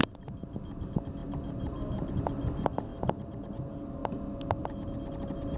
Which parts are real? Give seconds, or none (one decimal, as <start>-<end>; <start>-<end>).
0.0-1.2; 2.1-2.9; 3.5-5.6